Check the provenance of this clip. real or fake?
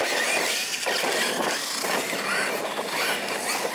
real